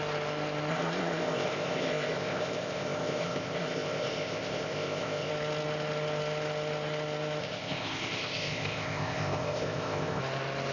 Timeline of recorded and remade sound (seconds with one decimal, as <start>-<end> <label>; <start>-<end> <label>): 0.0-0.7 recorded; 0.7-5.3 remade; 5.3-7.4 recorded; 7.4-10.2 remade; 10.2-10.7 recorded